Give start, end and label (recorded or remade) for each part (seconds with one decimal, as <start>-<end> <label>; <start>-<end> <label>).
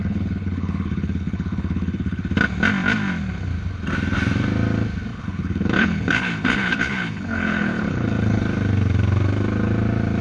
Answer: 0.0-2.2 remade; 2.2-5.1 recorded; 5.1-8.4 remade; 8.4-10.2 recorded